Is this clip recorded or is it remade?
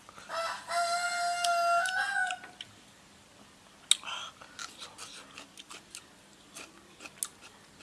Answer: recorded